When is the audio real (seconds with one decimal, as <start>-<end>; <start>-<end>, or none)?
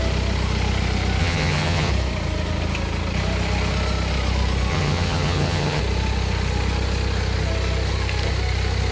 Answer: 0.0-1.2; 1.9-4.7; 5.8-8.9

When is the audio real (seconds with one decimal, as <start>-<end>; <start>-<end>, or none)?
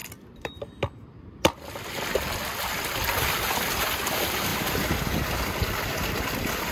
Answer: 0.0-6.7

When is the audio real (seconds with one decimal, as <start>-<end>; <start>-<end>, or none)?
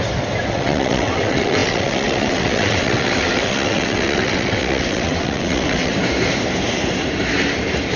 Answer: 0.0-0.5; 5.9-8.0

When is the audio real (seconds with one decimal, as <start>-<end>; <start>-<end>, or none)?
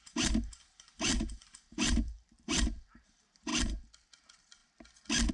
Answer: 3.5-4.1; 4.6-5.3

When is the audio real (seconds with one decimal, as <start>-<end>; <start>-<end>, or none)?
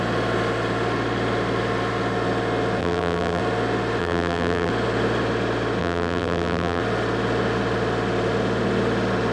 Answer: 0.0-2.8; 3.4-4.0; 4.7-5.8; 6.8-9.3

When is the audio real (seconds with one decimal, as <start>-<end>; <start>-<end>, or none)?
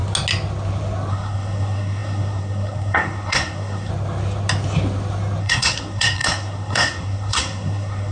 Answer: 0.0-1.1; 3.9-5.4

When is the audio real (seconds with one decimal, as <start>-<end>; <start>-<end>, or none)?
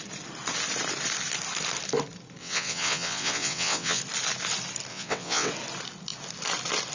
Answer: 0.0-2.4; 4.0-4.9; 5.5-6.9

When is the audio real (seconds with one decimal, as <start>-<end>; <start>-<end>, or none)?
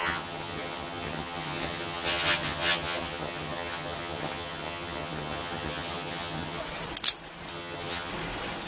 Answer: 6.6-7.5; 8.1-8.7